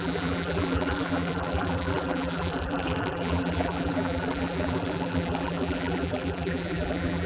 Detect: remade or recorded remade